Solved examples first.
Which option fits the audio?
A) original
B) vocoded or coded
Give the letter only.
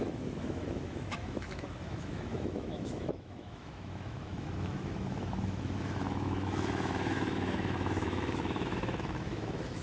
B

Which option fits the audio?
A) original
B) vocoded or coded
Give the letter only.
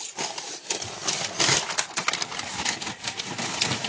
A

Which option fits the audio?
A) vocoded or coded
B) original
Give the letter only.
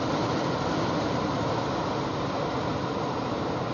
B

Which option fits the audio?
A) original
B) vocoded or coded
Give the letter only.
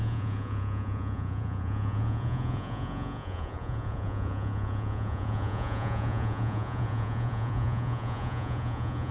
B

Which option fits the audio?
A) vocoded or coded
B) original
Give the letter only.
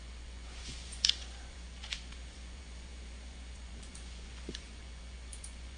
A